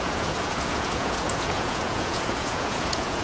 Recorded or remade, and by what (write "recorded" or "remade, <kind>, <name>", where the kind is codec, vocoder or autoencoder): remade, vocoder, Vocos